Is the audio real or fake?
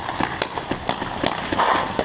real